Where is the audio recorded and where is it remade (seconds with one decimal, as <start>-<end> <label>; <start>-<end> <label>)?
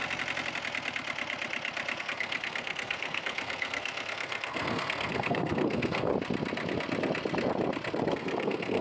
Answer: 0.0-2.0 recorded; 2.0-6.1 remade; 6.1-8.1 recorded; 8.1-8.8 remade